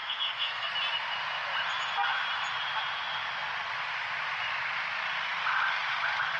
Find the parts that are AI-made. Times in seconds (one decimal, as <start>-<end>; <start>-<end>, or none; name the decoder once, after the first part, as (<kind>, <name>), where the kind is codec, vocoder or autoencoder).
0.0-0.7 (codec, SNAC)